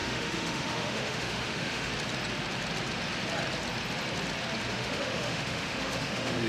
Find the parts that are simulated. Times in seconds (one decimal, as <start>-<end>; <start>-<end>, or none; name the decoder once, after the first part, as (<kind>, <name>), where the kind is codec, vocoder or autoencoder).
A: 0.0-1.9 (autoencoder, DAC-VAE); 4.7-6.5

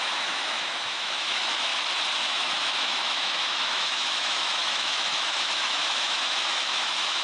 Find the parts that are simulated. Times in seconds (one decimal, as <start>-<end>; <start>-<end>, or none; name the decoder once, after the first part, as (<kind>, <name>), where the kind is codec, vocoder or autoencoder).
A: 0.0-1.7 (autoencoder, DAC-VAE); 2.2-7.2

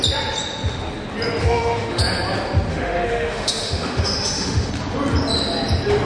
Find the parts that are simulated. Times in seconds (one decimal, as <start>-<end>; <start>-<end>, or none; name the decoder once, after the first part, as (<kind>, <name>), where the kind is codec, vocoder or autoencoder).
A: 1.4-2.0 (autoencoder, DAC-VAE); 2.7-4.7

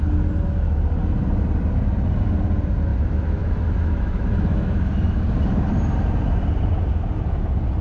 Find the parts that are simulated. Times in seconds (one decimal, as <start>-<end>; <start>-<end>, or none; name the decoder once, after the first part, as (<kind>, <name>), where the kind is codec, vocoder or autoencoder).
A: 2.9-5.2 (autoencoder, DAC-VAE)

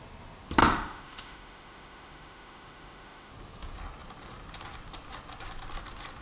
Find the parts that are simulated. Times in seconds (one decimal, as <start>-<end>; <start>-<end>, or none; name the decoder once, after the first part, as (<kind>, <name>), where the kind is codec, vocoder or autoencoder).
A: 0.6-3.3 (autoencoder, DAC-VAE)

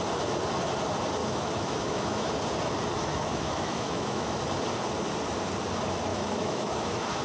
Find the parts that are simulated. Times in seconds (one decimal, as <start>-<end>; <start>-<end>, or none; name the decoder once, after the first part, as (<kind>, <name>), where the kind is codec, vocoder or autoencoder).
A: 1.2-2.3 (autoencoder, DAC-VAE); 3.1-4.4; 6.1-7.2